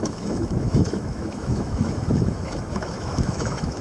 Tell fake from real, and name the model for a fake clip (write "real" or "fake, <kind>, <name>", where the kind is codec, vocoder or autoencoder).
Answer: fake, autoencoder, DAC-VAE